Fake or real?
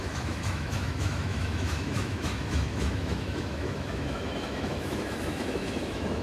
fake